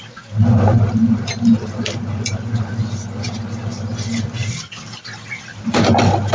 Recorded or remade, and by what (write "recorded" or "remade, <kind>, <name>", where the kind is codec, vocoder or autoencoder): remade, vocoder, BigVGAN v2